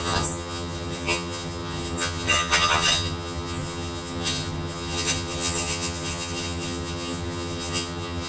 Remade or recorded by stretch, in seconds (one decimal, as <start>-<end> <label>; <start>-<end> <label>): 0.0-8.3 remade